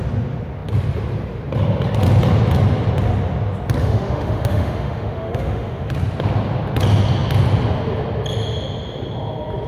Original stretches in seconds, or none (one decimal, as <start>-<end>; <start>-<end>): 0.0-3.8; 5.9-9.7